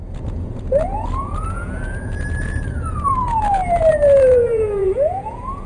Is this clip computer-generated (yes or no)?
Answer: yes